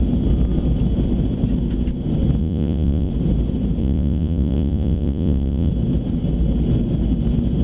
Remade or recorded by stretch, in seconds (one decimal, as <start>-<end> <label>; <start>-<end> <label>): 0.0-2.4 recorded; 2.4-3.1 remade; 3.1-3.8 recorded; 3.8-5.7 remade; 5.7-7.6 recorded